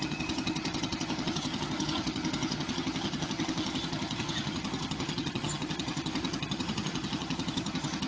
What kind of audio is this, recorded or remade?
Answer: remade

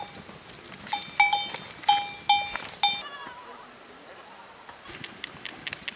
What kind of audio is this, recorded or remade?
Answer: recorded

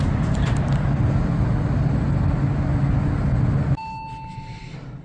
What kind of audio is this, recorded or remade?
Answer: recorded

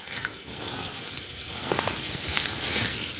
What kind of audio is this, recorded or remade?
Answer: remade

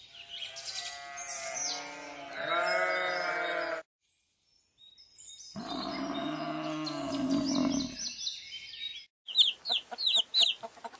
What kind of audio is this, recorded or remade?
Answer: recorded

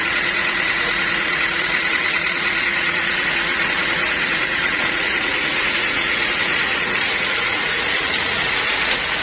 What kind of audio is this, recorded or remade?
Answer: remade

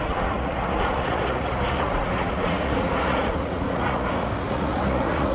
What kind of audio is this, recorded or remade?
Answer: remade